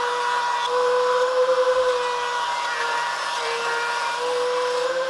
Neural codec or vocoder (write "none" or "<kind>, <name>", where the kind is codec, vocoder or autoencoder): vocoder, BigVGAN v2